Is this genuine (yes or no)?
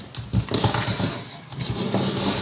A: yes